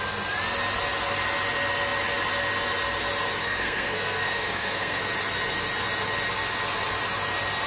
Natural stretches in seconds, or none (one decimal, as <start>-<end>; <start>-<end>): 0.0-3.4; 5.0-7.7